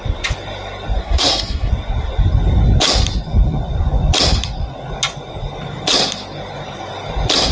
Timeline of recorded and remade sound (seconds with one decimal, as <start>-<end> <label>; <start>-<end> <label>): 0.0-1.0 recorded; 1.0-1.7 remade; 1.7-7.5 recorded